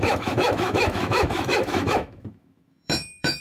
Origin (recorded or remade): remade